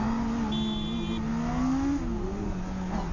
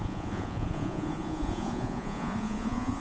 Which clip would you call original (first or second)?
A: first